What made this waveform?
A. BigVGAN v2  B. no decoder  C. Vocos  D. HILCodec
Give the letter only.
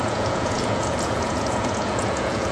C